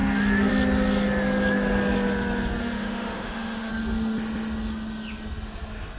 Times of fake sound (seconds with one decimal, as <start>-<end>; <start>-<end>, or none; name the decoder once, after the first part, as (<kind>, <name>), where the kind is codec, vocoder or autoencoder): 2.6-3.7 (autoencoder, DAC-VAE)